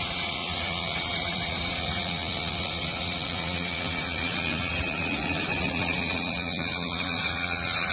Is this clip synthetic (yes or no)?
yes